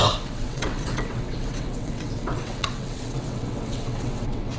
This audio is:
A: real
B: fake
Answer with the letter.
B